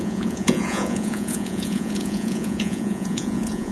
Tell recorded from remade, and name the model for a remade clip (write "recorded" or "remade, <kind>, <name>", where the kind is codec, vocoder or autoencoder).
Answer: remade, vocoder, Vocos